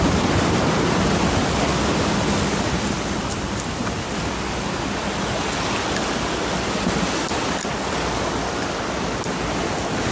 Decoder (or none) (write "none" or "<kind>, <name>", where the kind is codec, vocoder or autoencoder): none